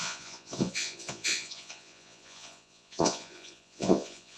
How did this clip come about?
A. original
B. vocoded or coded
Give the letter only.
B